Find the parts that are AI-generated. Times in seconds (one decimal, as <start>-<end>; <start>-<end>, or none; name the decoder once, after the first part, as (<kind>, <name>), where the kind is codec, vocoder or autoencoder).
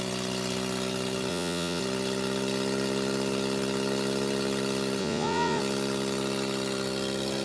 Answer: 1.3-1.8 (vocoder, Vocos); 5.0-5.6